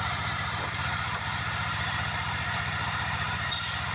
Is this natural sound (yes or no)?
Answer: no